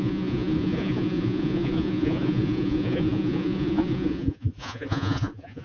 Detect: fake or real fake